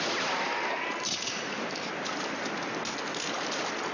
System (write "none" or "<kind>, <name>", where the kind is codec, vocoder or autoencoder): none